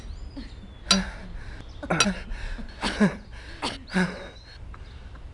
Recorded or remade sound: recorded